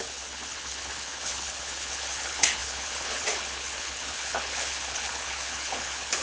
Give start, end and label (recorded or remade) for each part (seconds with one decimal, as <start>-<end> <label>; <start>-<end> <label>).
0.0-6.2 remade